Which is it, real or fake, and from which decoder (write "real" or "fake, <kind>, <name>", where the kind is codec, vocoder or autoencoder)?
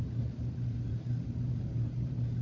fake, vocoder, BigVGAN v2